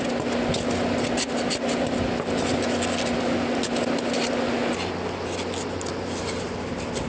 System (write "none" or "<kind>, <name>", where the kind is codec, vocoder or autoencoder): none